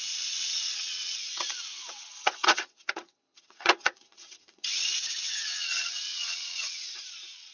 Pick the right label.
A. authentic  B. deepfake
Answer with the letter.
B